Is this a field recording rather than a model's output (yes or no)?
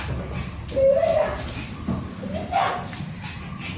yes